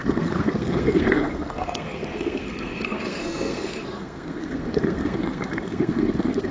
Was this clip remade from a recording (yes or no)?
yes